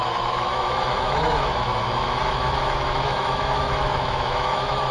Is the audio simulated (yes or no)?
yes